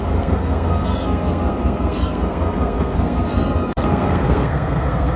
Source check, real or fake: fake